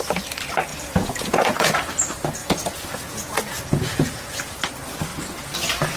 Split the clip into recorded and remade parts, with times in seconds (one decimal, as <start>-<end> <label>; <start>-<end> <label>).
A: 0.0-0.7 recorded; 0.7-1.9 remade; 1.9-2.4 recorded; 2.4-4.6 remade; 4.6-6.0 recorded